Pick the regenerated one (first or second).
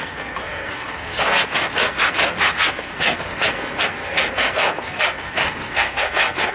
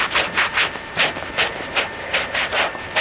first